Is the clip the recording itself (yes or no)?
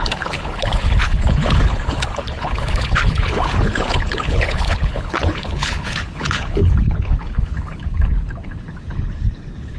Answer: no